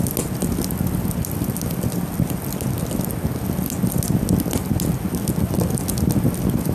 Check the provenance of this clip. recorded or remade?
recorded